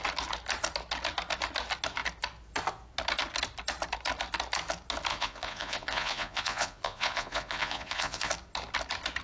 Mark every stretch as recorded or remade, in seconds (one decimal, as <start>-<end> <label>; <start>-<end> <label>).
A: 0.0-5.1 recorded; 5.1-8.3 remade; 8.3-9.2 recorded